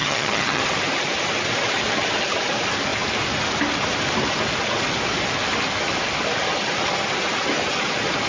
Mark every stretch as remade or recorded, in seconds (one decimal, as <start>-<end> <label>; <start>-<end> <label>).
0.0-0.6 remade; 0.6-8.3 recorded